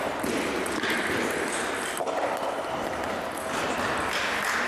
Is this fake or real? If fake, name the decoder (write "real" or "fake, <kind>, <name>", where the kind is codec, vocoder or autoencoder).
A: real